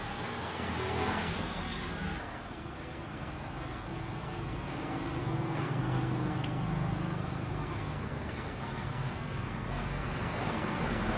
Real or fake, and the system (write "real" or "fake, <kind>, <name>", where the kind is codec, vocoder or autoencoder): fake, codec, SNAC